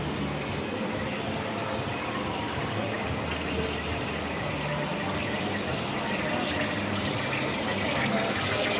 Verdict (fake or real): real